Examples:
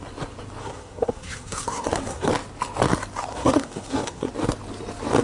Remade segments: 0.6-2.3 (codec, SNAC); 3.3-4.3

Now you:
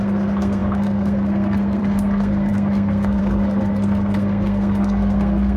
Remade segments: 0.0-5.6 (codec, SNAC)

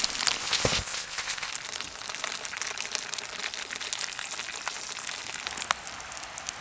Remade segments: 0.4-1.5 (codec, ZipCodec)

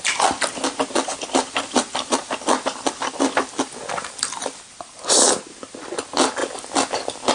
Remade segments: 1.4-5.4 (vocoder, BigVGAN v2); 6.4-7.3